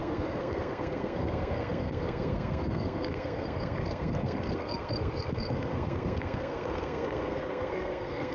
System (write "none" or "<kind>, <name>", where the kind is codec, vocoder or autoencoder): codec, SNAC